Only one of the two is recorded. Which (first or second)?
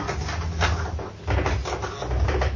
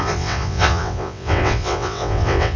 first